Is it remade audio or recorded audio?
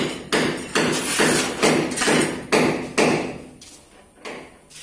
recorded